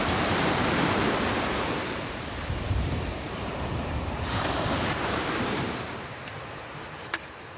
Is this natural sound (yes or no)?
no